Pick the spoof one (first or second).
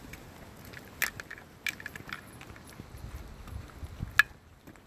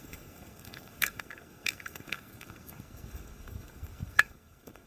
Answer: second